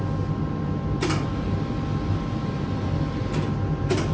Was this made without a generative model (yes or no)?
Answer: yes